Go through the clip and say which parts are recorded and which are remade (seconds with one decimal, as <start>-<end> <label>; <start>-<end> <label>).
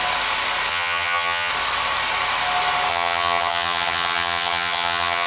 0.0-0.7 recorded; 0.7-1.5 remade; 1.5-2.9 recorded; 2.9-5.3 remade